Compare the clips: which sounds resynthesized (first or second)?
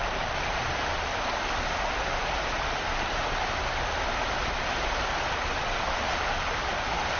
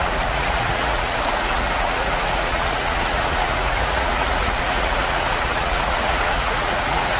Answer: second